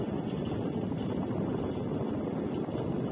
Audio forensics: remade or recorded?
recorded